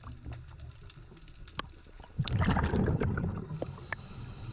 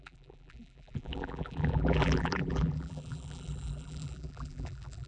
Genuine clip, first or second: first